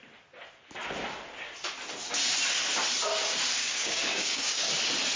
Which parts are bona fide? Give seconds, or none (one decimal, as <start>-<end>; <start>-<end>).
0.0-3.6; 4.7-5.2